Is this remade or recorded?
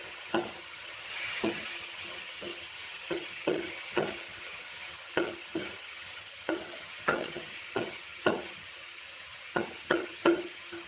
remade